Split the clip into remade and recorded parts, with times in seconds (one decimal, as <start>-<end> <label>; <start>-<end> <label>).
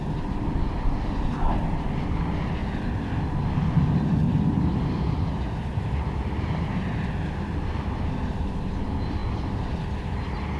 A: 0.0-10.6 recorded